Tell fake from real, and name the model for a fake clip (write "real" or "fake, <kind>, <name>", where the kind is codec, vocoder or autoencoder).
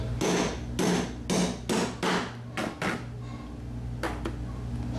real